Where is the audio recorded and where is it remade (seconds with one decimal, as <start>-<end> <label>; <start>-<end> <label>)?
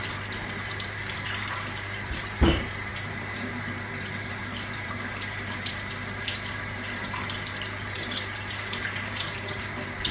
0.0-10.1 remade